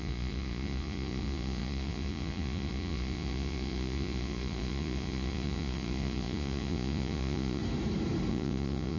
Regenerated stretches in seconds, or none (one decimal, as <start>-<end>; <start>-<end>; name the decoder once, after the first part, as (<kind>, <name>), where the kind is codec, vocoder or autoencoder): 0.0-7.6 (vocoder, Vocos); 8.3-9.0